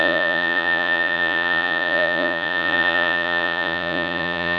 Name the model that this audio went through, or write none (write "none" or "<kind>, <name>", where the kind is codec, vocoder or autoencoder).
vocoder, Vocos